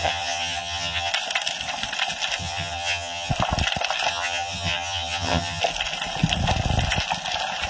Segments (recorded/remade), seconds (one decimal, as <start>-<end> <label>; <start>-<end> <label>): 0.0-1.1 remade; 1.1-2.4 recorded; 2.4-3.3 remade; 3.3-4.1 recorded; 4.1-5.6 remade; 5.6-7.7 recorded